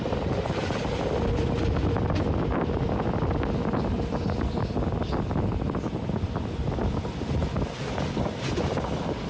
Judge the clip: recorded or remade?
recorded